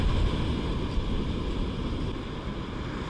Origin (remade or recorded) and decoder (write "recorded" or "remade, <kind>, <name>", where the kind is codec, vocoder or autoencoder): recorded